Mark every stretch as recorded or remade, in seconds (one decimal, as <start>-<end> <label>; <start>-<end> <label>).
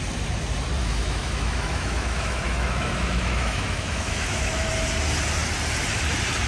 0.0-0.8 recorded; 0.8-4.7 remade; 4.7-6.5 recorded